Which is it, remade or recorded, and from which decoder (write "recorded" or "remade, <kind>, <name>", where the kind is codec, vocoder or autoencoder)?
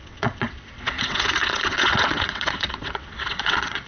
remade, vocoder, WaveNeXt